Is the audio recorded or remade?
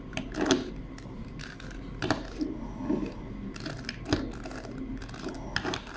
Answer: recorded